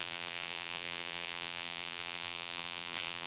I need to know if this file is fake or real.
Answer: fake